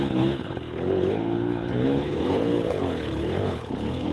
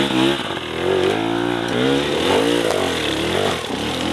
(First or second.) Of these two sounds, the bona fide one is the second